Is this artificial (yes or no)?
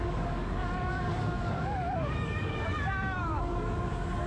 yes